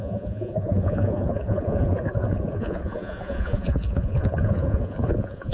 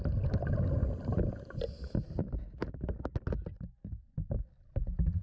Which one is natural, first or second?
second